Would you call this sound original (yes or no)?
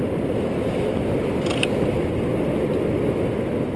yes